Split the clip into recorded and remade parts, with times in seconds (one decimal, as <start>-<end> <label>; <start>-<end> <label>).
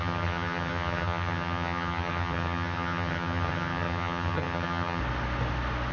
0.0-5.0 remade; 5.0-5.9 recorded